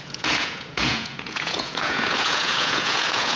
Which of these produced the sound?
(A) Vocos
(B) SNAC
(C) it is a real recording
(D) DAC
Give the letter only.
A